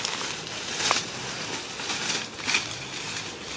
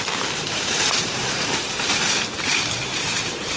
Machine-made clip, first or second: second